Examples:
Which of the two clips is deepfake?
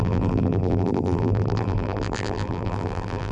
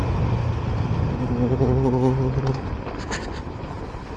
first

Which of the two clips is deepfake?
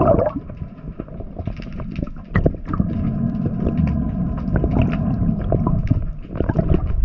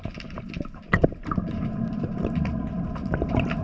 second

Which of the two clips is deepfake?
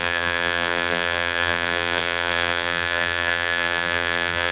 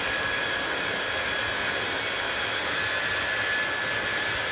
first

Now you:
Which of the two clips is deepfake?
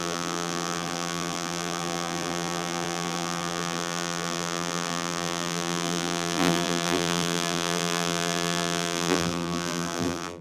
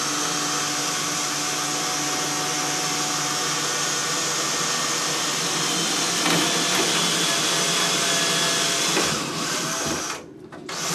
first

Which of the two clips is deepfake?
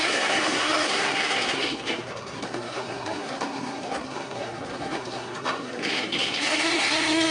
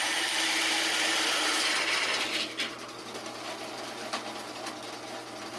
first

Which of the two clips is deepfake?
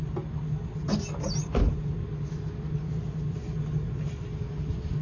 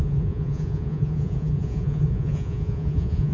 second